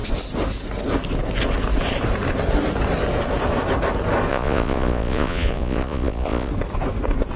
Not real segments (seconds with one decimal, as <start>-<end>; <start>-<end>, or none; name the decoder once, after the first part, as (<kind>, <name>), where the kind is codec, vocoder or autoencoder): 4.3-6.5 (vocoder, Vocos)